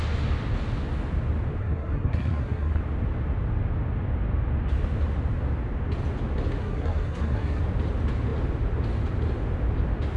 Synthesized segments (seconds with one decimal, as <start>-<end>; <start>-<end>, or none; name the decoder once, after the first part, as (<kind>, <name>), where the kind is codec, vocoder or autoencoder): 1.6-2.8 (codec, SNAC); 6.6-7.6